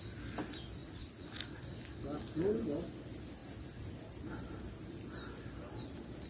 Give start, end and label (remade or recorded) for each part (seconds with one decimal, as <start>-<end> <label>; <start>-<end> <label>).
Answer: 0.0-0.8 recorded; 0.8-1.4 remade; 1.4-6.3 recorded

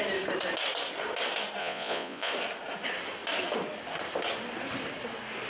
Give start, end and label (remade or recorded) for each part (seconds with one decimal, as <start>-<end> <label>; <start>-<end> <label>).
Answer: 0.0-1.6 recorded; 1.6-2.3 remade; 2.3-5.5 recorded

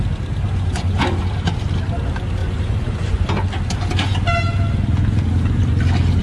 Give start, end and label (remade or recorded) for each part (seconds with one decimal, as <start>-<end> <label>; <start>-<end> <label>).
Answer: 0.0-0.4 recorded; 0.4-1.2 remade; 1.2-2.4 recorded; 2.4-3.3 remade; 3.3-6.2 recorded

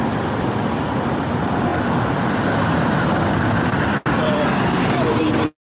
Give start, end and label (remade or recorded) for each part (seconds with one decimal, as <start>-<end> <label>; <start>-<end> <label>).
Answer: 0.0-5.8 recorded

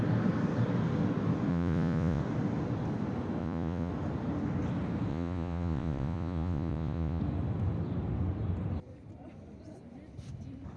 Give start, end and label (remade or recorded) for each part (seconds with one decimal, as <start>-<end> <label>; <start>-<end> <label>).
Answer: 0.0-1.5 recorded; 1.5-2.2 remade; 2.2-3.4 recorded; 3.4-3.9 remade; 3.9-5.1 recorded; 5.1-7.2 remade; 7.2-10.8 recorded

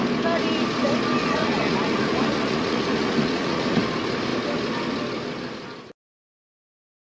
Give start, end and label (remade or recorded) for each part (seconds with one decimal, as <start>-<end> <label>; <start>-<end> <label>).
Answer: 0.0-1.2 recorded; 1.2-3.8 remade; 3.8-7.2 recorded

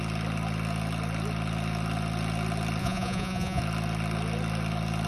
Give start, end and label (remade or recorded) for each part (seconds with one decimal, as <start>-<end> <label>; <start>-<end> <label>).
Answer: 0.0-2.8 recorded; 2.8-3.6 remade; 3.6-5.1 recorded